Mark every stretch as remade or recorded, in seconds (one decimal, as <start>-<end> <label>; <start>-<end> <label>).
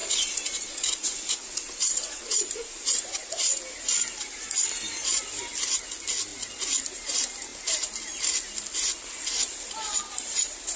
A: 0.0-3.6 remade; 3.6-10.8 recorded